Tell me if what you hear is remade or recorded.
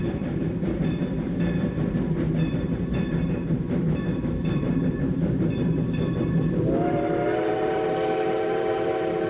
remade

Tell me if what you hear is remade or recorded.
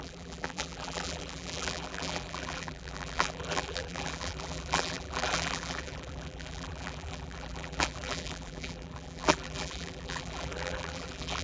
remade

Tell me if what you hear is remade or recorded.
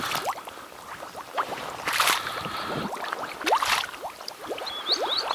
remade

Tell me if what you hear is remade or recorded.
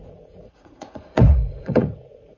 remade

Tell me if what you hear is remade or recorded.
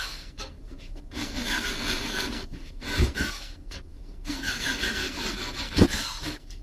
remade